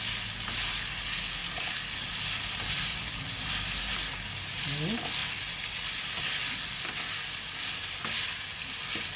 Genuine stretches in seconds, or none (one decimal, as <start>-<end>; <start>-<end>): 0.0-9.2